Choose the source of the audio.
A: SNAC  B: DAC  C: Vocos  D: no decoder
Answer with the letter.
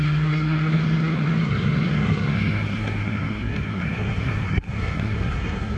A